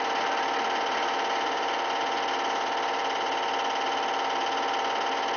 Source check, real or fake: real